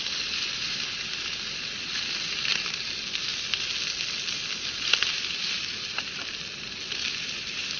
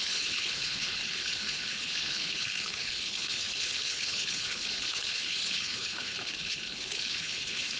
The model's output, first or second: second